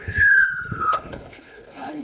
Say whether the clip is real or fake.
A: fake